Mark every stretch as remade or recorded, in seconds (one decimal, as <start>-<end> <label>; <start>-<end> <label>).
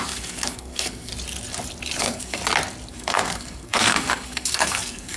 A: 0.0-1.1 remade; 1.1-2.0 recorded; 2.0-2.4 remade; 2.4-2.9 recorded; 2.9-5.2 remade